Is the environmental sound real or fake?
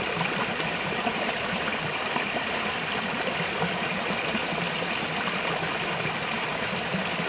fake